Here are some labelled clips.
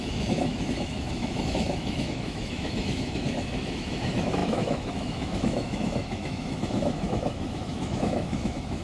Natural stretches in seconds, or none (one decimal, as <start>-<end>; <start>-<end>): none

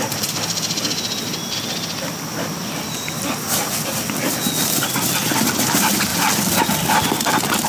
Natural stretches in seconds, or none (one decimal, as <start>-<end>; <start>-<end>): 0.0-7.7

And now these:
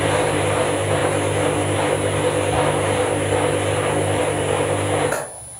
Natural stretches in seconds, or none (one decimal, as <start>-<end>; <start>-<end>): 0.0-5.6

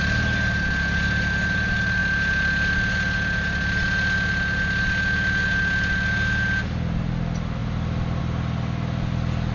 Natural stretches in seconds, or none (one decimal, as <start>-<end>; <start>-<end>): 0.0-9.5

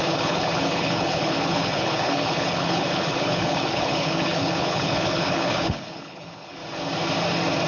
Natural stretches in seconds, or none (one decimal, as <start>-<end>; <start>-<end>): 6.6-7.7

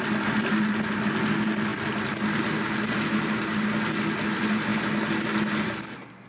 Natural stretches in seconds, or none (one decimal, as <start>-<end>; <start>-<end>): 0.0-6.3

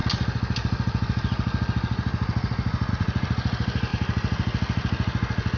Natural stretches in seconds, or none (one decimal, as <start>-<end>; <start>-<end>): 0.0-2.9; 3.9-5.6

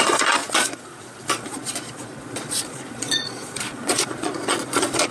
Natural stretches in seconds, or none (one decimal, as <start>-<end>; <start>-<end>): none